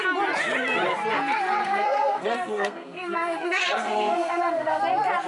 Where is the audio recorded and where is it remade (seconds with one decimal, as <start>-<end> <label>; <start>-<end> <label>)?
0.0-1.6 recorded; 1.6-4.8 remade; 4.8-5.3 recorded